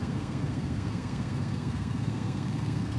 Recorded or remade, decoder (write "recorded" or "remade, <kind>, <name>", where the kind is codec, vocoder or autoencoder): remade, codec, SNAC